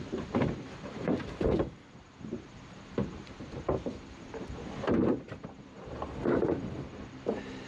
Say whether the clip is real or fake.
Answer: fake